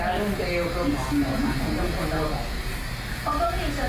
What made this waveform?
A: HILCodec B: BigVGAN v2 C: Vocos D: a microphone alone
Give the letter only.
D